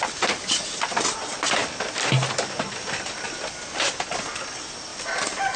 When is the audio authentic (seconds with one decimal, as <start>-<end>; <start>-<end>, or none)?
0.0-1.6; 3.1-4.9